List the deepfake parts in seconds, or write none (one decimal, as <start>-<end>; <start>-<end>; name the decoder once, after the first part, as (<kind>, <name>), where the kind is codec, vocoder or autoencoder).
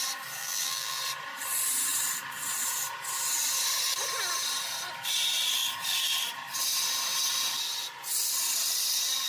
0.4-1.0 (vocoder, BigVGAN v2)